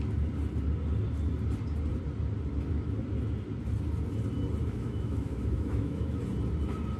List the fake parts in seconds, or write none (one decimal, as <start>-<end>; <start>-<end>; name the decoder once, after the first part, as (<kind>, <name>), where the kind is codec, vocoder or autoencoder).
4.6-6.2 (autoencoder, DAC-VAE)

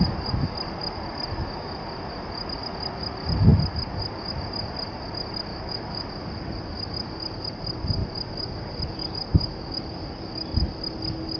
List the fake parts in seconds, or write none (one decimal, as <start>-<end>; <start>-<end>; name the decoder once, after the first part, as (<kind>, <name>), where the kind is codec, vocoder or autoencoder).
5.5-6.1 (autoencoder, DAC-VAE); 9.3-9.8

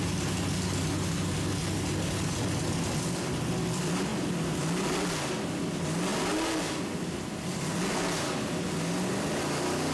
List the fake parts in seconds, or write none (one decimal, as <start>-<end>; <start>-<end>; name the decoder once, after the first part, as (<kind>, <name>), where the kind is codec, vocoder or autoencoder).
none